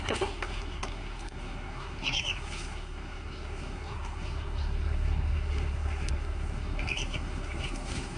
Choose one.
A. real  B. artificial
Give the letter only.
B